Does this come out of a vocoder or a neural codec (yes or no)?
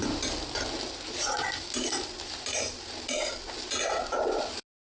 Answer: no